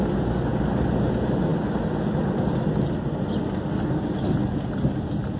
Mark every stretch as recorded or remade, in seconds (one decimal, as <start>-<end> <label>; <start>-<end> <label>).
0.0-5.4 recorded